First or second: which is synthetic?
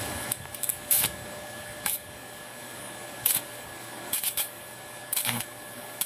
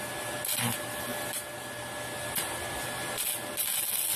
first